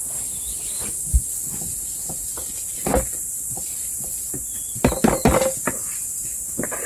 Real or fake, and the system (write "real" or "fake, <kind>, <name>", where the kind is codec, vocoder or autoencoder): real